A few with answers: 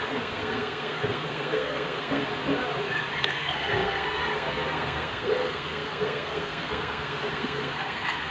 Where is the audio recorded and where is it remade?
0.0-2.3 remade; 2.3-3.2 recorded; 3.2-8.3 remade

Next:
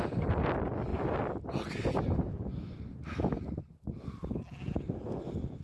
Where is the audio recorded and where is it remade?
0.0-5.6 recorded